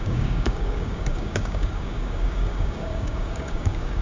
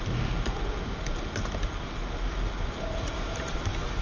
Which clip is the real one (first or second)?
second